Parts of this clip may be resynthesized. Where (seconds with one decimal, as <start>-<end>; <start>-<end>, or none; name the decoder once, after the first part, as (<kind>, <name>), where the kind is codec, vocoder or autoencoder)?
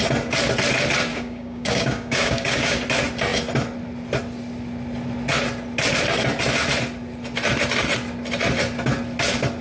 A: 1.1-2.8 (codec, DAC)